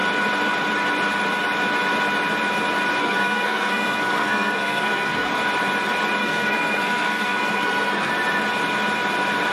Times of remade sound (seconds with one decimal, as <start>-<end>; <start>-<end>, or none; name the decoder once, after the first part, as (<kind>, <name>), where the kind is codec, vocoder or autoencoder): 3.0-5.3 (codec, SNAC); 6.2-8.1

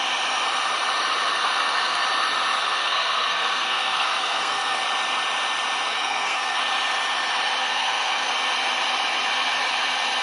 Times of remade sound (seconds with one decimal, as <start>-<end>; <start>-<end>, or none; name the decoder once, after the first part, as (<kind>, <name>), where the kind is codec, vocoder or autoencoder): 1.3-2.0 (codec, SNAC); 2.6-4.8; 5.9-6.6; 7.6-8.3

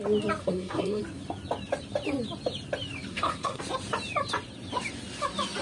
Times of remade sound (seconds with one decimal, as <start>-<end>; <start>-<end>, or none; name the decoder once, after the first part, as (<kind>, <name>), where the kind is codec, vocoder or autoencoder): 0.4-1.0 (codec, SNAC); 3.1-3.6